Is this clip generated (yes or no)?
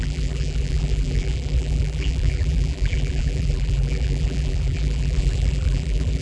yes